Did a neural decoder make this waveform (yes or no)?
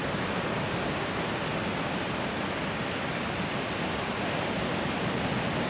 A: no